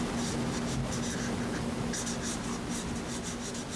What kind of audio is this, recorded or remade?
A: recorded